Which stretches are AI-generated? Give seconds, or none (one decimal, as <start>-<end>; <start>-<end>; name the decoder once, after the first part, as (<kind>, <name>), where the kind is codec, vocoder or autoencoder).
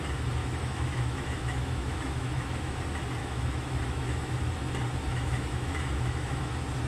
0.4-2.8 (autoencoder, DAC-VAE); 3.2-4.3; 5.1-6.5